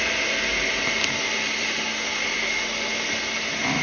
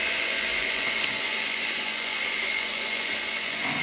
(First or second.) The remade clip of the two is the second